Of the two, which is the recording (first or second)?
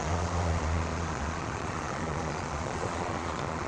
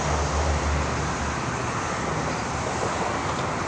second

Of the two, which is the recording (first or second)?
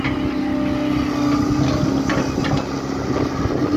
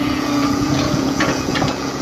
first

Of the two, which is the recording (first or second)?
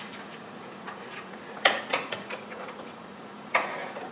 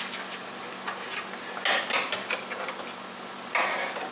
second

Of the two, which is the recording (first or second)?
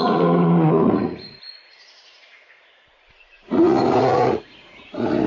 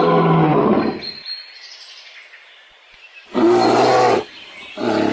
second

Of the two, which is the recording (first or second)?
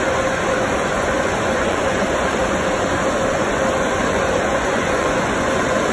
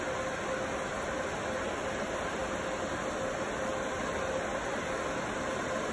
second